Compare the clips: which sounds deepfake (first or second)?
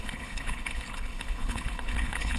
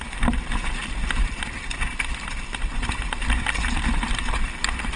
first